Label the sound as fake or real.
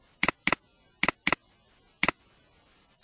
real